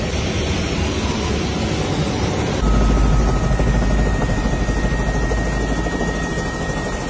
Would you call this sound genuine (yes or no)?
yes